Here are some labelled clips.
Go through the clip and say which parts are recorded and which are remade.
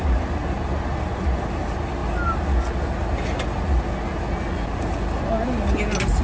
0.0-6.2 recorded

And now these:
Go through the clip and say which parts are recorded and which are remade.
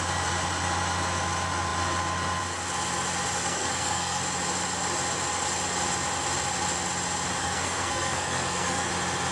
0.0-3.4 recorded; 3.4-4.2 remade; 4.2-7.4 recorded; 7.4-8.9 remade; 8.9-9.3 recorded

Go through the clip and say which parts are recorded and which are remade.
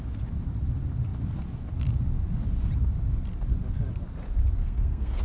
0.0-4.6 recorded; 4.6-5.2 remade